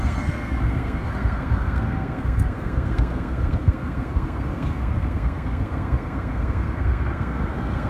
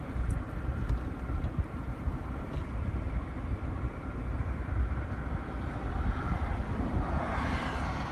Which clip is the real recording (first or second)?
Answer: second